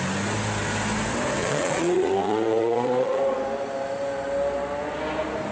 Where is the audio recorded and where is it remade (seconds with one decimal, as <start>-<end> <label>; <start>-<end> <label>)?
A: 0.0-1.4 recorded; 1.4-3.2 remade; 3.2-5.5 recorded